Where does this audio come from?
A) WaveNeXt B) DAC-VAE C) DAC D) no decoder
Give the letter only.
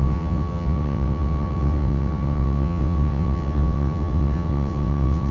A